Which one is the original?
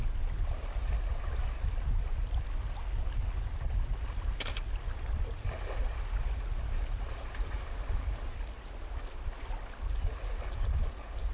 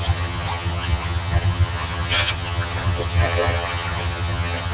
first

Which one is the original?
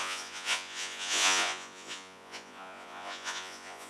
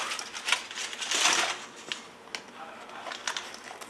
second